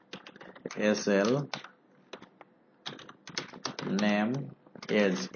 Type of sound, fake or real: real